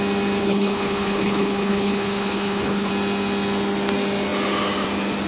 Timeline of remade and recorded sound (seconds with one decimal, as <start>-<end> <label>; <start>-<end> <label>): 0.0-0.4 recorded; 0.4-2.9 remade; 2.9-5.3 recorded